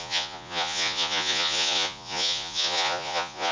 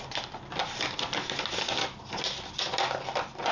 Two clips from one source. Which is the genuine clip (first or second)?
second